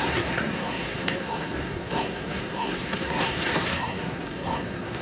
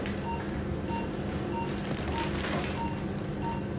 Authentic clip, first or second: second